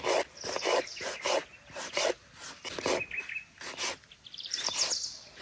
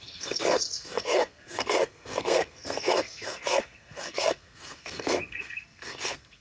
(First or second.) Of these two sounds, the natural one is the first